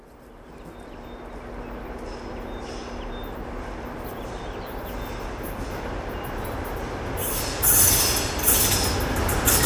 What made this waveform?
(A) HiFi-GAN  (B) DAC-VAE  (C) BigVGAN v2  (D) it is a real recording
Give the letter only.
D